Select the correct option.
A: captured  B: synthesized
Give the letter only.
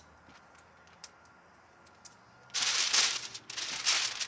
A